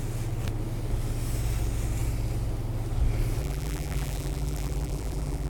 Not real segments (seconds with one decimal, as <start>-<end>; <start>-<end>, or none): 3.4-5.5